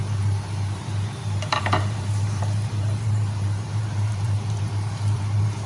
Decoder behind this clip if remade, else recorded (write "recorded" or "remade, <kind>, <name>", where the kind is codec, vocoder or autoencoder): remade, vocoder, BigVGAN v2